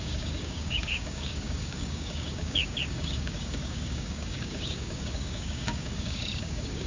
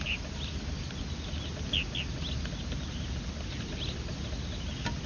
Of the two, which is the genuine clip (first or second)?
second